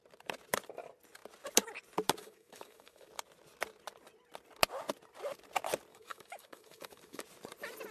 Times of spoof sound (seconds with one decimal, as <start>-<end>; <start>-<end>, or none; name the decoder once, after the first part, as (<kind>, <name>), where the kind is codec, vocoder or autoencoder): 2.2-3.1 (autoencoder, DAC-VAE); 5.9-7.2